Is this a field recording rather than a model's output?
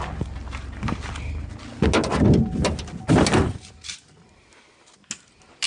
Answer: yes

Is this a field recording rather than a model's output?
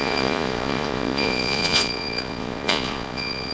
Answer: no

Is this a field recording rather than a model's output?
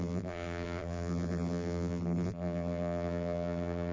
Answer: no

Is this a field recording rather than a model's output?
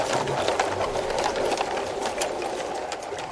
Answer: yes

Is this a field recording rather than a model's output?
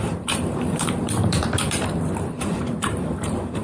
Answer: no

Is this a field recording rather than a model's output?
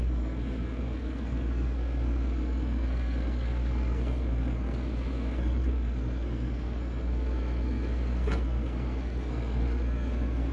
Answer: no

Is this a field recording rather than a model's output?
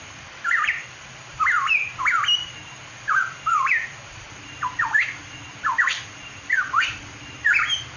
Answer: yes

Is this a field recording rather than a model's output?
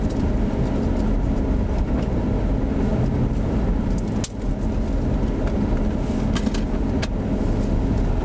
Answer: yes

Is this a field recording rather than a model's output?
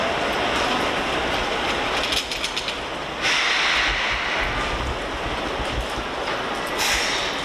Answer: yes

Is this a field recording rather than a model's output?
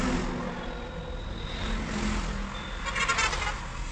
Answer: yes